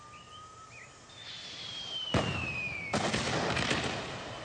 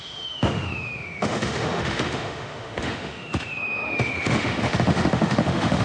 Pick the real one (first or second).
first